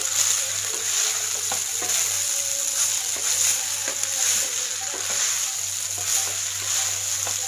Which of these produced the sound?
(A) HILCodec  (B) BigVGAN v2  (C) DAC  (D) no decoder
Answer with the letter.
D